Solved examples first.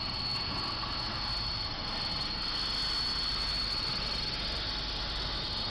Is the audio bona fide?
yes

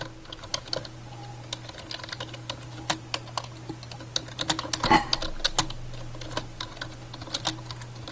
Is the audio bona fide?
yes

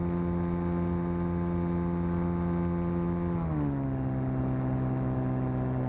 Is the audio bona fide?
yes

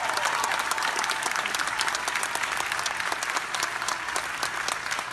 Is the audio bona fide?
yes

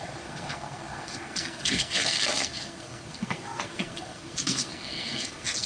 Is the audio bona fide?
no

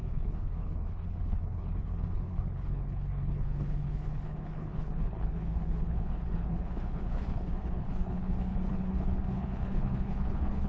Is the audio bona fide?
no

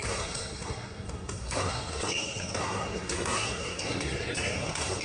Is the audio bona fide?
no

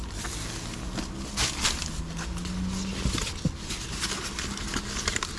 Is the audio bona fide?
yes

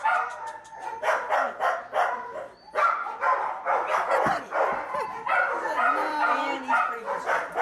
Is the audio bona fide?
no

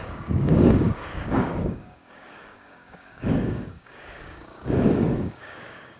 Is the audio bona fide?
no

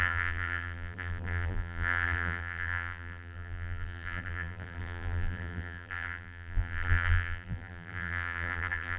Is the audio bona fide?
no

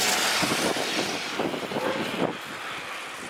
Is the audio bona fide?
yes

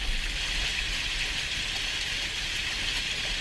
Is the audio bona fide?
yes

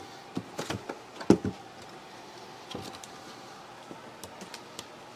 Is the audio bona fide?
yes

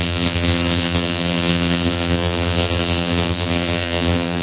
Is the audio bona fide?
no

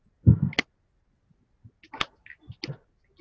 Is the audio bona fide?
yes